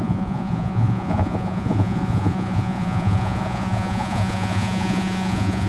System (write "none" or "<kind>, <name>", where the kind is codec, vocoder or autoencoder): vocoder, Vocos